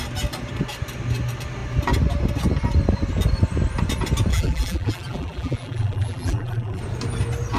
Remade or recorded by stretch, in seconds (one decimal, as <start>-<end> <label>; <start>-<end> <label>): 0.0-4.3 recorded; 4.3-6.8 remade; 6.8-7.6 recorded